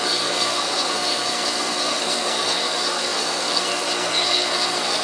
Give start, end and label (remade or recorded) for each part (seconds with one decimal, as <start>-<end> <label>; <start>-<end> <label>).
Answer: 0.0-5.0 remade